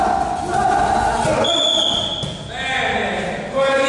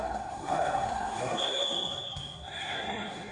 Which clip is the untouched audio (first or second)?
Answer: first